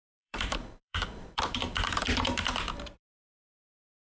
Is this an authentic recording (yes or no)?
no